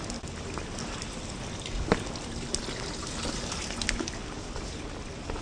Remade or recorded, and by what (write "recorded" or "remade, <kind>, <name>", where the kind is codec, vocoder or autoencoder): recorded